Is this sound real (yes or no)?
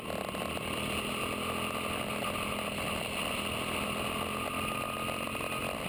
yes